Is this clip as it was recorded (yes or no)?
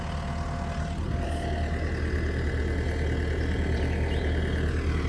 yes